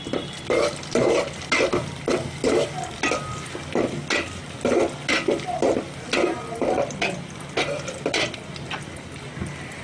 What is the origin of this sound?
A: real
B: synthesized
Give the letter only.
A